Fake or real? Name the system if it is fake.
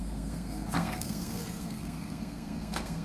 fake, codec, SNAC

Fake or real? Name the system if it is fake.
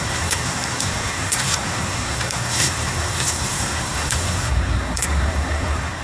fake, codec, SNAC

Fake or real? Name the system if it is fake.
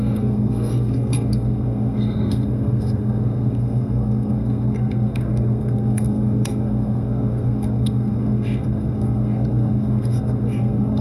fake, codec, SNAC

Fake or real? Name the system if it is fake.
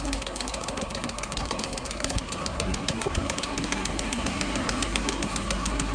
fake, codec, SNAC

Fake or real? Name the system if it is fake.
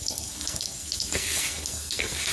fake, codec, SNAC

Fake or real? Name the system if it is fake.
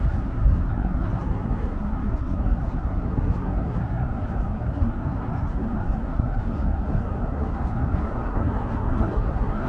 fake, codec, SNAC